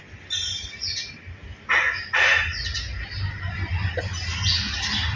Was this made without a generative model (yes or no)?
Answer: yes